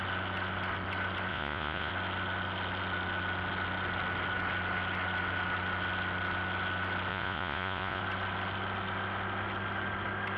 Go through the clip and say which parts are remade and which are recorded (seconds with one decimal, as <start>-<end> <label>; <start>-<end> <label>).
0.0-1.3 recorded; 1.3-1.9 remade; 1.9-7.1 recorded; 7.1-8.0 remade; 8.0-10.4 recorded